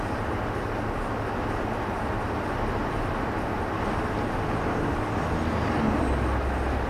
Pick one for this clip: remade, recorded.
recorded